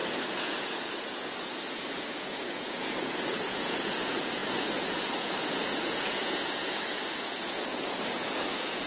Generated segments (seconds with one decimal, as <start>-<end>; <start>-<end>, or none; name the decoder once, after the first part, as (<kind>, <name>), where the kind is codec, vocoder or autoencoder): 0.0-8.9 (vocoder, Vocos)